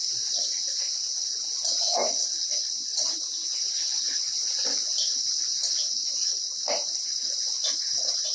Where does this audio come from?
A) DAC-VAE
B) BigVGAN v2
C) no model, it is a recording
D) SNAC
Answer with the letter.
C